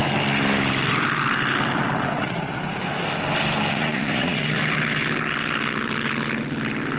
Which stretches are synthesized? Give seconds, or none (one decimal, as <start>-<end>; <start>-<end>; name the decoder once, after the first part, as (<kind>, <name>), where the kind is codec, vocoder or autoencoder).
2.1-2.6 (vocoder, Vocos); 3.7-4.5